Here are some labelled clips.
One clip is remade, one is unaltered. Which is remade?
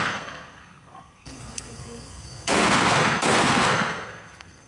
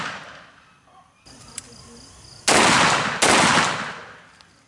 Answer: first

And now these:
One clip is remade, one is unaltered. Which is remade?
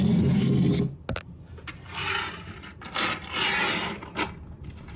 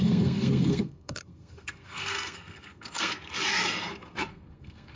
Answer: second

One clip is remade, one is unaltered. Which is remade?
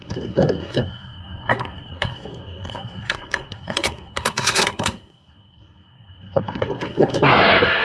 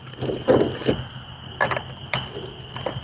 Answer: first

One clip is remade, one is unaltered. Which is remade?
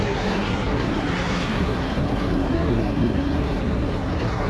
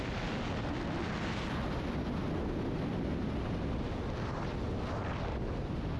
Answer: first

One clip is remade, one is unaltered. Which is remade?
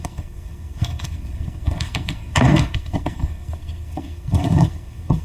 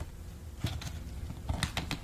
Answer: first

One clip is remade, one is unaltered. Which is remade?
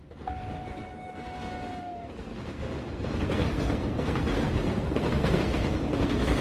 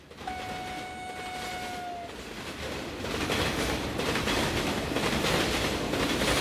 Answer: first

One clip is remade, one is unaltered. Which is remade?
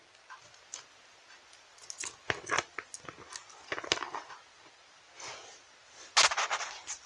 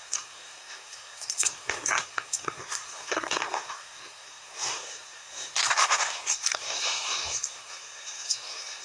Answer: second